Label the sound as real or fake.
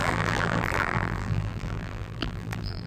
fake